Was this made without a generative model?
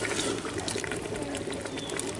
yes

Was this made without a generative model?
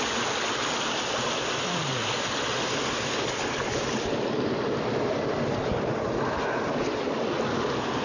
yes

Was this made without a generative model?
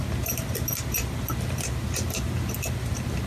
yes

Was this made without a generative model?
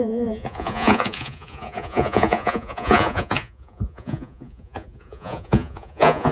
no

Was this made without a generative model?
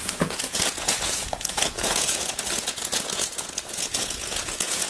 no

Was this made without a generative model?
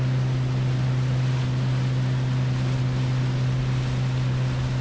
yes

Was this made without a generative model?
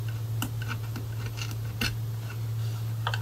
yes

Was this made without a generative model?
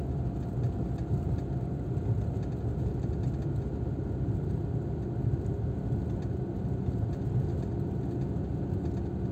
yes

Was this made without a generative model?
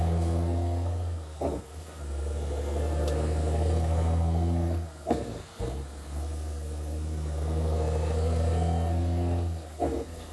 no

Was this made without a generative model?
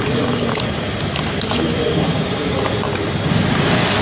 yes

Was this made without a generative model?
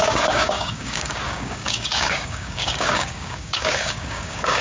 no